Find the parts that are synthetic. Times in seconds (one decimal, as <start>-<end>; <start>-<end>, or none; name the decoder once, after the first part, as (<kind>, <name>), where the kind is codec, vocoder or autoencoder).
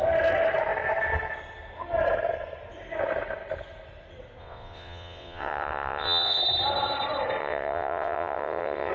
4.4-6.4 (vocoder, WaveNeXt); 7.4-8.9